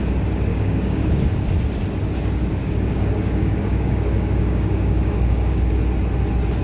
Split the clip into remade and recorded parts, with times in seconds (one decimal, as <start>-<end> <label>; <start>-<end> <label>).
0.0-0.5 recorded; 0.5-1.1 remade; 1.1-2.6 recorded; 2.6-5.7 remade; 5.7-6.6 recorded